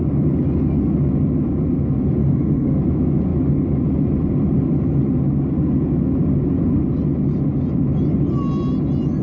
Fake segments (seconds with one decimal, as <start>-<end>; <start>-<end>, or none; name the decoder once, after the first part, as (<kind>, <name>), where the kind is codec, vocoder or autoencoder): 2.2-2.8 (autoencoder, DAC-VAE)